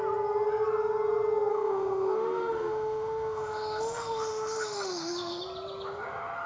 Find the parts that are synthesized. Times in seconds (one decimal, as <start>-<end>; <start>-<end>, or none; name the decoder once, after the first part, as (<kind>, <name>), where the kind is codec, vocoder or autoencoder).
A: 1.5-5.4 (autoencoder, DAC-VAE)